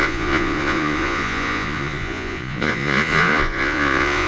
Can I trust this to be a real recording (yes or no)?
no